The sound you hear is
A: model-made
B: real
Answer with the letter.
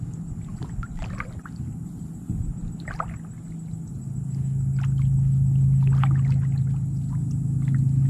B